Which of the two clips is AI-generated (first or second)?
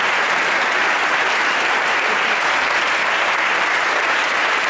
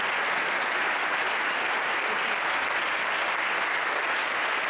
first